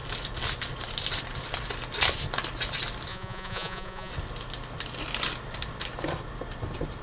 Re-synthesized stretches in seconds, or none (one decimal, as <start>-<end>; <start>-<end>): 3.1-4.1